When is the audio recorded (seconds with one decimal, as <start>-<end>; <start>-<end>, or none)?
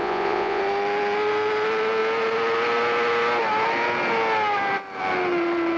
0.6-5.8